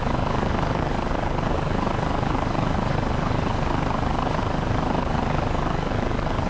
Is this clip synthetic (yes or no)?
yes